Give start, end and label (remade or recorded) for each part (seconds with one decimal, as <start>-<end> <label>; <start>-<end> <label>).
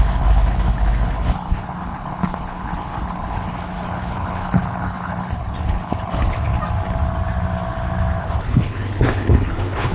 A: 0.0-6.5 remade; 6.5-8.2 recorded; 8.2-9.9 remade